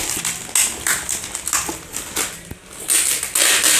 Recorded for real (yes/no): yes